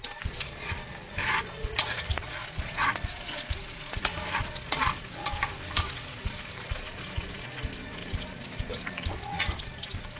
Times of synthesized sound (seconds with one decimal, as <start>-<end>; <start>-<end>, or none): 0.0-10.2